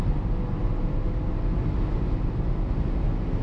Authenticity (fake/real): real